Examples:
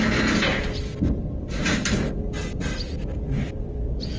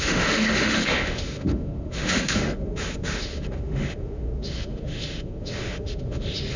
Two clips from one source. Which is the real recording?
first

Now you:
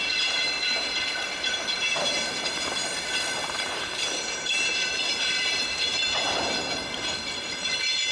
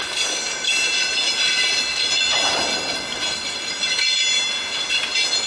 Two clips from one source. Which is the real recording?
second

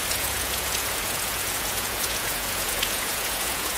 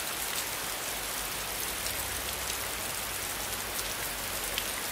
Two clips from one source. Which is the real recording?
second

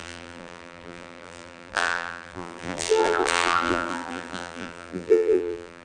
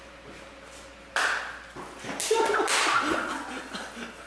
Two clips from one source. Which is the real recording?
second